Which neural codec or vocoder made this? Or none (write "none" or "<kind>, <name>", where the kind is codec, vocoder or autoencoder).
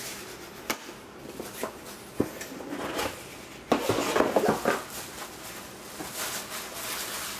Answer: none